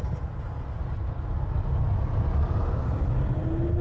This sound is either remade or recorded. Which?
recorded